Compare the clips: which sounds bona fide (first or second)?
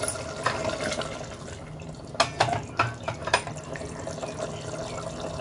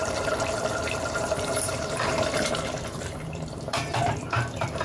first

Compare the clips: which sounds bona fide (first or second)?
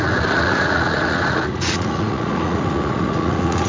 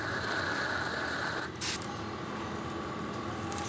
second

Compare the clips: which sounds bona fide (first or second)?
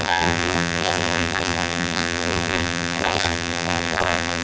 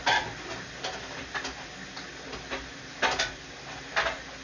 second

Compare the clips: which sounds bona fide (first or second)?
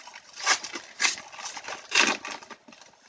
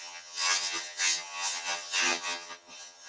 first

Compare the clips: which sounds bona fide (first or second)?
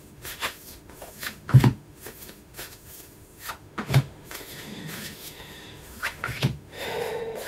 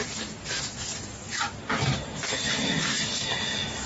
second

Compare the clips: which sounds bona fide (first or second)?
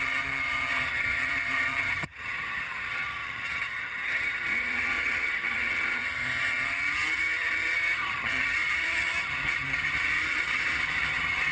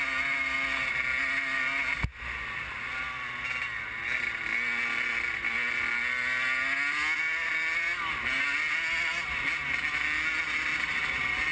second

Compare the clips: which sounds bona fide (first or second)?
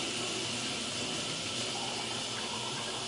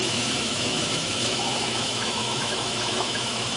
first